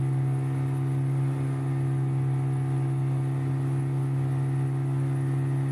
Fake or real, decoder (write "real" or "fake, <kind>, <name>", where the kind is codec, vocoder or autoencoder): real